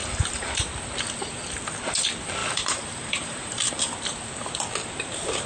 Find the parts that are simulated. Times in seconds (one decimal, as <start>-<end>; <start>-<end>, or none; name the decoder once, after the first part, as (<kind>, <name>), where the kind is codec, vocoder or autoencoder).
0.0-0.5 (vocoder, BigVGAN v2); 2.4-3.7